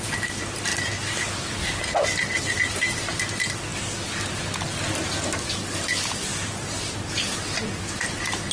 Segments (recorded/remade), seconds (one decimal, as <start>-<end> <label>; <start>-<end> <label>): 0.0-8.5 recorded